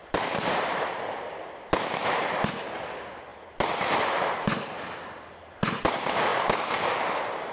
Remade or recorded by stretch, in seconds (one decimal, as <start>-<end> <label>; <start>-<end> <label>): 0.0-0.9 remade; 0.9-3.3 recorded; 3.3-4.3 remade; 4.3-7.5 recorded